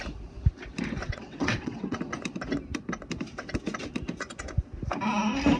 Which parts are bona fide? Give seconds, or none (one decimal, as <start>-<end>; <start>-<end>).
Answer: 0.0-1.0; 2.0-5.6